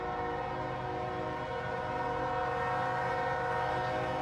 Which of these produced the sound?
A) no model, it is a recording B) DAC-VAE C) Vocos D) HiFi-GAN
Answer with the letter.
A